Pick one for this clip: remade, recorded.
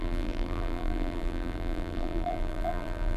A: remade